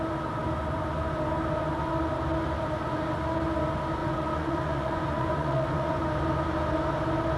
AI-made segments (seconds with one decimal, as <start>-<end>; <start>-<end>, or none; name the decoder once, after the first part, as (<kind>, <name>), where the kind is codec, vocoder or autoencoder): 4.0-6.0 (vocoder, Vocos)